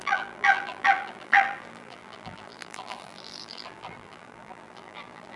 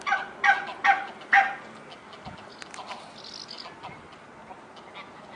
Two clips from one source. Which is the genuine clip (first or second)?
second